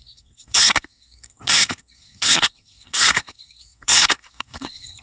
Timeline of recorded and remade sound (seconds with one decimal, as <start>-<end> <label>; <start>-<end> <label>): 0.0-5.0 remade